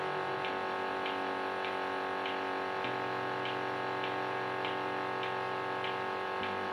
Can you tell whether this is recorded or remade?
recorded